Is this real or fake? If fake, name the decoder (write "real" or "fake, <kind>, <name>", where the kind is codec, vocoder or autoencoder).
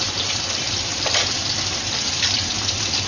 fake, vocoder, BigVGAN v2